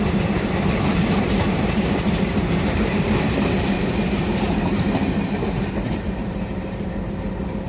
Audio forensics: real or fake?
fake